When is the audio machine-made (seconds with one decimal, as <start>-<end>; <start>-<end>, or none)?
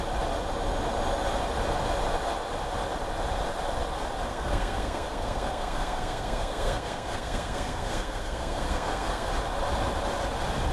4.3-9.3